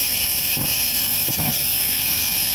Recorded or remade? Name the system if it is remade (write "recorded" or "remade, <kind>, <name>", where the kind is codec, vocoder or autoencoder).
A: remade, codec, SNAC